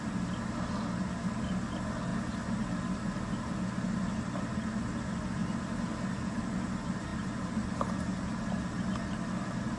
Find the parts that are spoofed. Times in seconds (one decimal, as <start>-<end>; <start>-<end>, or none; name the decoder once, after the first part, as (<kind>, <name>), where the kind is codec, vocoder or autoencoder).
none